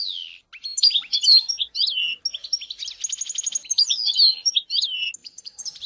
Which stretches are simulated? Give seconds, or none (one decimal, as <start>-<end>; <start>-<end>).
5.2-5.9